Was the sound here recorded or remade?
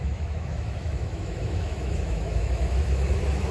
remade